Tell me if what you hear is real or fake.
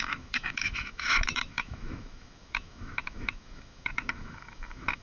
fake